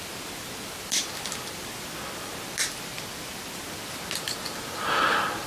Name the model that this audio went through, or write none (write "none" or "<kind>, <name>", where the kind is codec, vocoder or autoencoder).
none